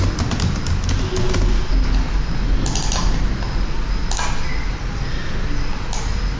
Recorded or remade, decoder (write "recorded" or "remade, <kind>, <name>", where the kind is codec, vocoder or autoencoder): recorded